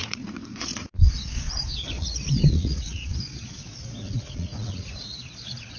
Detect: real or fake fake